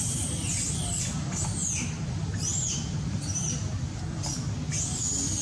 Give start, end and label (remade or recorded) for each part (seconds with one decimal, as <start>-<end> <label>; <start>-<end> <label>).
0.0-5.4 recorded